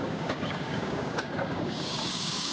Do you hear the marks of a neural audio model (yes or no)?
yes